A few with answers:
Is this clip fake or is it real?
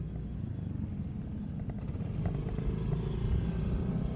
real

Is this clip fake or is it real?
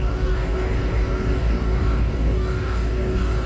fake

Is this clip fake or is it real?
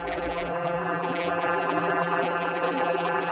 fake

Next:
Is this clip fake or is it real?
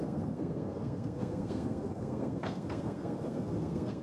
fake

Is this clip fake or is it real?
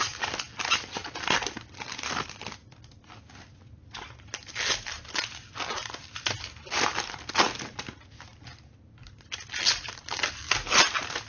real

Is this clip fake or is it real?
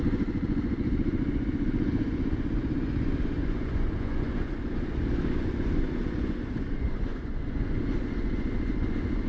fake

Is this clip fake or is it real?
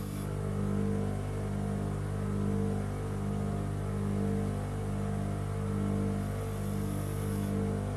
real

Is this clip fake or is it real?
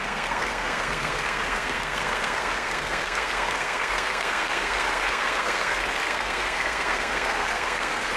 fake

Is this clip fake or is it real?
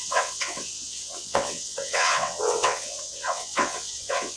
fake